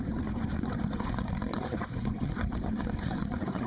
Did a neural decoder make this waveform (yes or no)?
yes